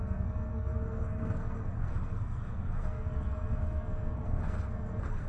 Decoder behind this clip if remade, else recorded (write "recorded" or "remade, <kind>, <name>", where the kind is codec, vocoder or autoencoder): remade, codec, SNAC